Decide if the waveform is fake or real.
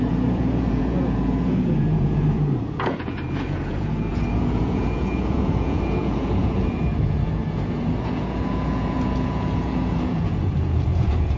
fake